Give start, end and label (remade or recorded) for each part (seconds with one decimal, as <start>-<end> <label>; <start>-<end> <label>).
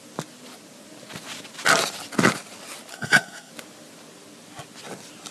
0.0-2.9 recorded; 2.9-3.5 remade; 3.5-5.3 recorded